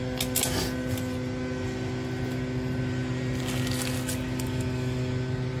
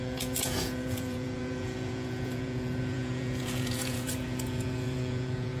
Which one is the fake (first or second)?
second